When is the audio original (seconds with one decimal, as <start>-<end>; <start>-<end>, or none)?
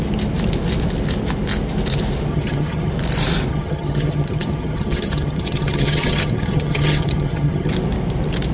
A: 0.0-2.3; 2.9-3.5; 7.7-8.5